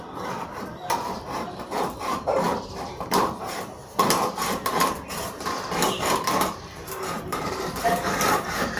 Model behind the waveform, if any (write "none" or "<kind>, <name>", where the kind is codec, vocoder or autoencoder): vocoder, BigVGAN v2